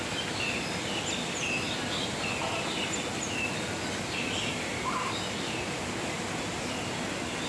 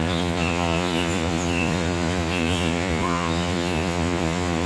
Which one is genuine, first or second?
first